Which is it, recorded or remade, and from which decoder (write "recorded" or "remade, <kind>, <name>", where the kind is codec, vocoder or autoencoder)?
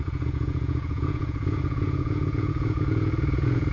remade, vocoder, Vocos